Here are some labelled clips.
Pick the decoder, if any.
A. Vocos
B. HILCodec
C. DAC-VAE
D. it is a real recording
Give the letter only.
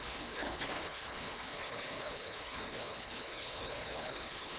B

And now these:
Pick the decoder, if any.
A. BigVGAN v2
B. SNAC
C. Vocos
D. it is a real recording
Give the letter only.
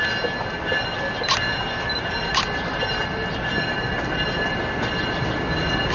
D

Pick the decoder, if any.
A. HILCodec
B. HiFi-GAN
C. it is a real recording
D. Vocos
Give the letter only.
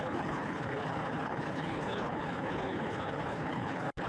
A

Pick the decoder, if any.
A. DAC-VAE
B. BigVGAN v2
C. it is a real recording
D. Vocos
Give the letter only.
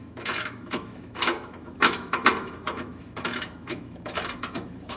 A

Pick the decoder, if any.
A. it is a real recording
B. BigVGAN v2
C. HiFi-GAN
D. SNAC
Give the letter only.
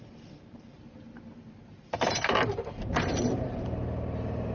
B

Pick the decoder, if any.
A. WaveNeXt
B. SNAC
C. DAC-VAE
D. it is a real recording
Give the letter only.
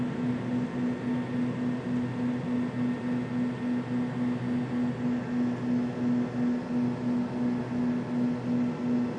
D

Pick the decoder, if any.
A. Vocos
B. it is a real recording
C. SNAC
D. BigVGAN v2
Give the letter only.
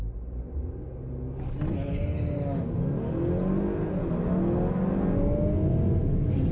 B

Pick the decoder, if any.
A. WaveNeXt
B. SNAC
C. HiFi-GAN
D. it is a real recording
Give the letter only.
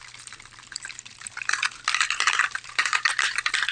D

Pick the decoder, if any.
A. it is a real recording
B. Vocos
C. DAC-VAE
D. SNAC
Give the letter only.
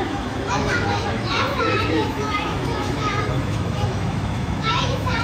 C